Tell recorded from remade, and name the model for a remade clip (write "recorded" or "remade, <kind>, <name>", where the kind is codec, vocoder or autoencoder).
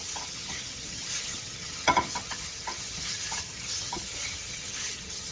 remade, vocoder, HiFi-GAN